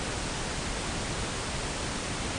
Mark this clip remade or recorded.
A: recorded